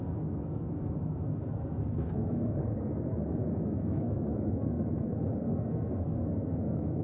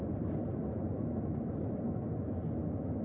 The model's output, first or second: first